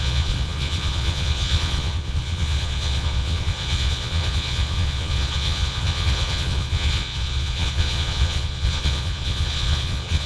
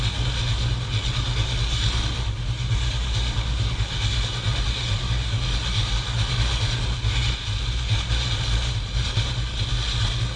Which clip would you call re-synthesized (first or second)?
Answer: first